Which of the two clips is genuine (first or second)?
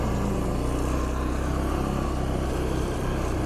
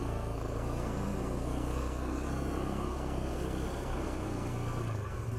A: first